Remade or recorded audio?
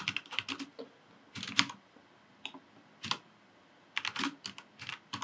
recorded